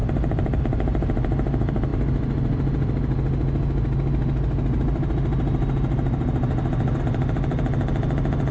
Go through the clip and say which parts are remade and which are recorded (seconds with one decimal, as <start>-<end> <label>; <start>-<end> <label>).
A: 0.0-0.6 remade; 0.6-8.5 recorded